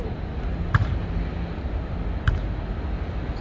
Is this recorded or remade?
recorded